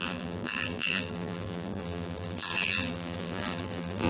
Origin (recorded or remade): remade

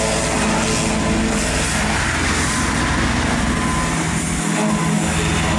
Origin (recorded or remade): recorded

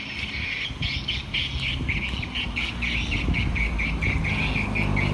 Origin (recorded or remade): recorded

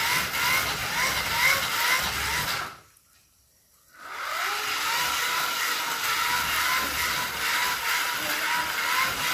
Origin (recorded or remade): recorded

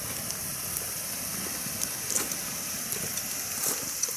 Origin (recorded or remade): remade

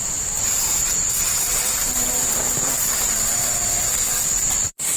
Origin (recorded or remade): remade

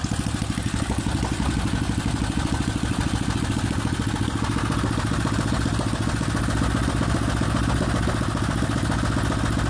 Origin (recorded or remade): recorded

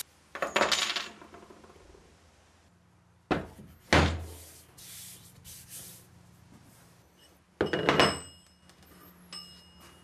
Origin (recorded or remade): recorded